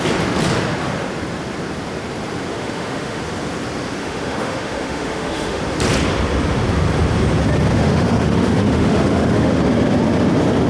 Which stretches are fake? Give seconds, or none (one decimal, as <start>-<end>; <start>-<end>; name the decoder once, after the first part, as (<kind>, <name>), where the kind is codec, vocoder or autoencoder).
2.5-3.2 (autoencoder, DAC-VAE); 4.0-5.6; 7.7-9.6